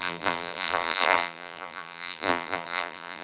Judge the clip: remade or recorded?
remade